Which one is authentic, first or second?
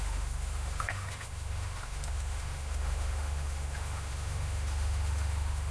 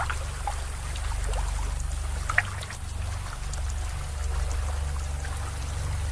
second